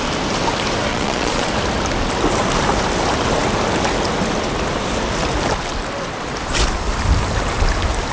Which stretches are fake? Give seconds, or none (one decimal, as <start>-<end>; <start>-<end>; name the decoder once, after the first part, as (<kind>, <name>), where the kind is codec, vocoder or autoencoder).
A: 0.9-1.5 (vocoder, Vocos)